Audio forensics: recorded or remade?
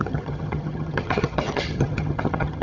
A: remade